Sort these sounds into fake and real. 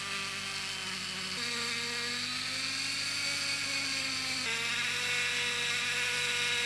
real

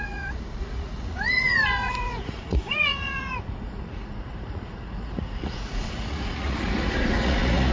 fake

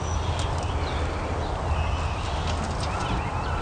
real